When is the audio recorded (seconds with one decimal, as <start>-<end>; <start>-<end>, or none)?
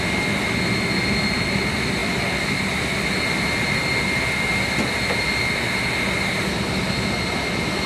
0.0-7.9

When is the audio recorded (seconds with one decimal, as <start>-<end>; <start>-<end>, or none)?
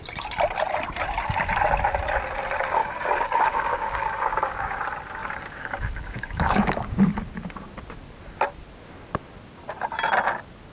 0.0-2.8; 4.8-5.2; 7.0-10.7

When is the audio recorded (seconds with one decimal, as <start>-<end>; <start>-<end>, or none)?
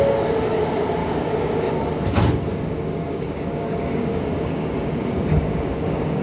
0.0-1.0; 1.7-2.5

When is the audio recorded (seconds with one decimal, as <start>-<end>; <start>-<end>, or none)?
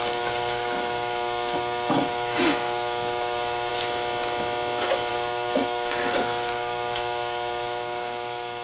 3.7-5.1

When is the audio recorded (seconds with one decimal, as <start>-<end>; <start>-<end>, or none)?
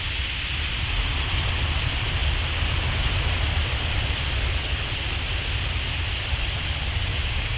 0.0-7.0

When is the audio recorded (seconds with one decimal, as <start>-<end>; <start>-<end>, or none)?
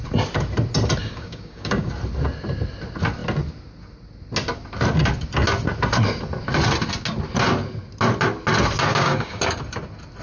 0.0-1.0; 1.9-8.9; 9.4-10.2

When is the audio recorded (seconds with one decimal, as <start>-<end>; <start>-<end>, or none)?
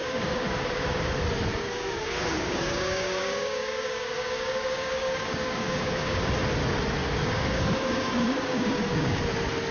1.1-1.5; 6.3-7.0; 9.2-9.7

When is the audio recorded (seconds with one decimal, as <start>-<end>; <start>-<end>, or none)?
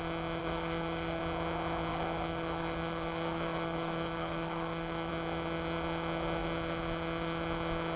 0.0-0.4; 1.2-1.9; 5.1-8.0